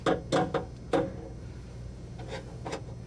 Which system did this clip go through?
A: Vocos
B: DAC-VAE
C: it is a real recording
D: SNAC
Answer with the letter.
C